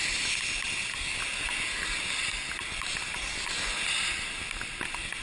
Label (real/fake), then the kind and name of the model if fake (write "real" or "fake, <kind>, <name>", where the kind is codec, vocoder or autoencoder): real